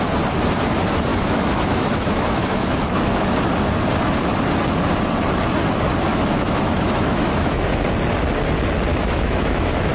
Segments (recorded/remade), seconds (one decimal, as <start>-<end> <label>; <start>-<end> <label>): 0.0-1.1 recorded; 1.1-3.2 remade; 3.2-6.1 recorded; 6.1-7.8 remade; 7.8-8.9 recorded; 8.9-9.9 remade